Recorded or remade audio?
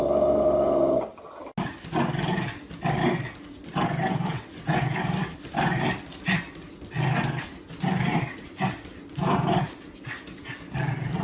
recorded